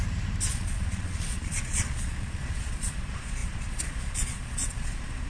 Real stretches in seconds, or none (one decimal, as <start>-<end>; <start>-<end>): 0.0-0.5